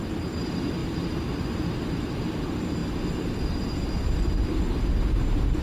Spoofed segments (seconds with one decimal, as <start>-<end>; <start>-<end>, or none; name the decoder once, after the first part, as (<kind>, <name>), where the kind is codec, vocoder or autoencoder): none